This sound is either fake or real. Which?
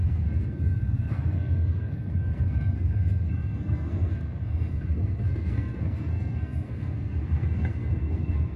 fake